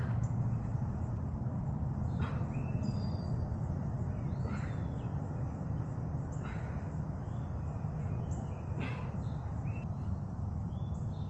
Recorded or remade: recorded